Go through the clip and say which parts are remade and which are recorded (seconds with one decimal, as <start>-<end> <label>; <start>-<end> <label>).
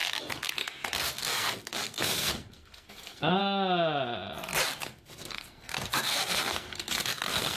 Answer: 0.0-3.4 remade; 3.4-4.8 recorded; 4.8-7.6 remade